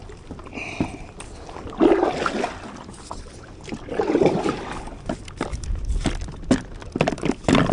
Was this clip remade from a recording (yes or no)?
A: no